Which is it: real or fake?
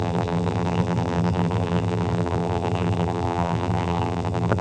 fake